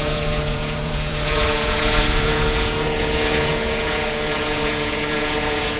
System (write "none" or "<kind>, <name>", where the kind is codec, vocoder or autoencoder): vocoder, Vocos